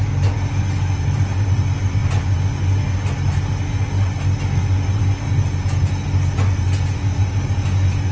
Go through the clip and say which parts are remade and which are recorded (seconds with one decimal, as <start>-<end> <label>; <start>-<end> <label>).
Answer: 0.0-8.1 recorded